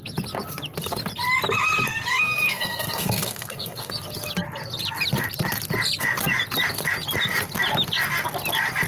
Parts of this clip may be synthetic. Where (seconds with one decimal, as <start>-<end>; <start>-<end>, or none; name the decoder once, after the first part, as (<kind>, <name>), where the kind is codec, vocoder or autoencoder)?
2.1-3.9 (codec, SNAC)